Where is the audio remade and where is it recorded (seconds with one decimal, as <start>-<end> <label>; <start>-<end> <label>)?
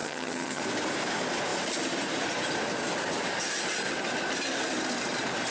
0.0-0.6 remade; 0.6-5.5 recorded